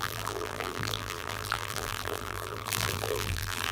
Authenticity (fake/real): fake